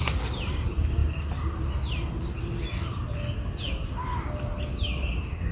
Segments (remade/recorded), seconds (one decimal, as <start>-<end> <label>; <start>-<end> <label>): 0.0-5.5 recorded